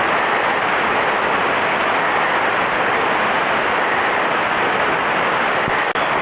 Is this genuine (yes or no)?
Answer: yes